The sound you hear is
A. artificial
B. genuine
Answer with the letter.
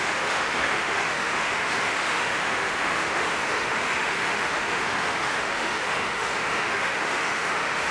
A